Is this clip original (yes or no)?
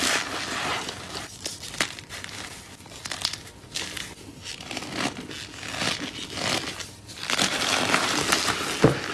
yes